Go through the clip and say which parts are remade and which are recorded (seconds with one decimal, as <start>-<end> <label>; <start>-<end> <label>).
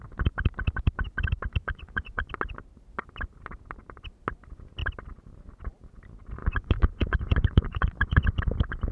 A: 0.0-1.6 recorded; 1.6-2.3 remade; 2.3-6.4 recorded; 6.4-8.2 remade; 8.2-8.9 recorded